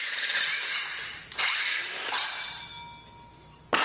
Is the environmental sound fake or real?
real